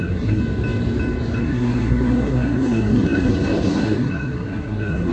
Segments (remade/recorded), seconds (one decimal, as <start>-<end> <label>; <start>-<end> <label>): 0.0-0.4 remade; 0.4-1.4 recorded; 1.4-5.1 remade